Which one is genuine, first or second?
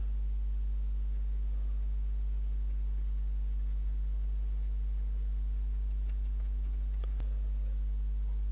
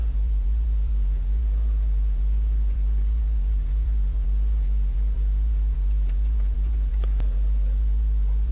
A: first